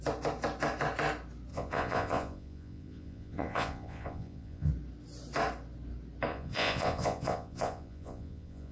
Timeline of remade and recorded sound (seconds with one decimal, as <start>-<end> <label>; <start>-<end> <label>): 0.0-1.5 recorded; 1.5-4.7 remade; 4.7-6.3 recorded; 6.3-8.7 remade